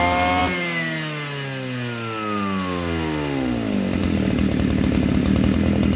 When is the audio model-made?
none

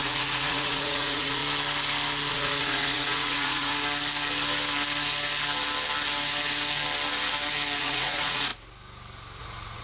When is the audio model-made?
0.0-1.4 (vocoder, Vocos); 2.3-3.7; 7.8-8.5; 9.4-9.8

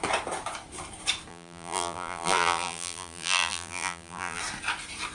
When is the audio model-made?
1.3-4.4 (vocoder, BigVGAN v2)